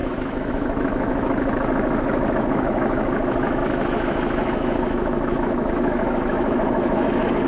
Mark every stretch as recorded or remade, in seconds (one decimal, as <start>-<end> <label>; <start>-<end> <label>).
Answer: 0.0-7.5 remade